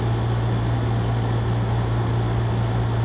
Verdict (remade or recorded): recorded